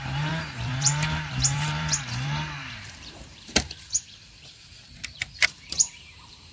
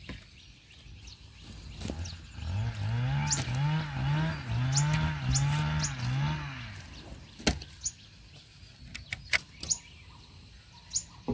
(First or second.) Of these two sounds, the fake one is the first